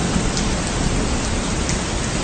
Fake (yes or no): no